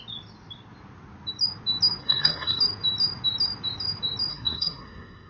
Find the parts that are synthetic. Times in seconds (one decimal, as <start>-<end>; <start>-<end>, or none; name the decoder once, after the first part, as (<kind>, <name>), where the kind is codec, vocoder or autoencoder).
2.0-2.6 (codec, SNAC); 4.3-5.3